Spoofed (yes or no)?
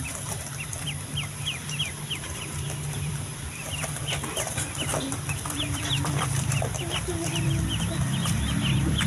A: yes